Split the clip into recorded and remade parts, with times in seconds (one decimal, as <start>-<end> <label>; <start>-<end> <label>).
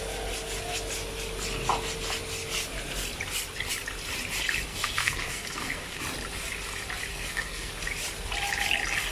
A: 0.0-4.7 recorded; 4.7-6.0 remade; 6.0-7.1 recorded; 7.1-7.7 remade; 7.7-9.1 recorded